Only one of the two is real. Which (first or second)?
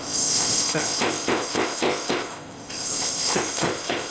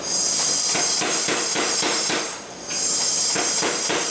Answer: second